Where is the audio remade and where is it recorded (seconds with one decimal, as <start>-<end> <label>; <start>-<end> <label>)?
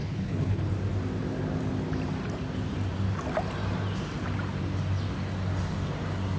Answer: 0.0-0.7 remade; 0.7-6.4 recorded